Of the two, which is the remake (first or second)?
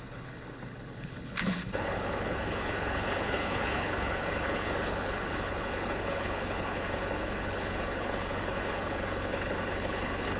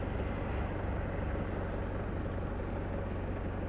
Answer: first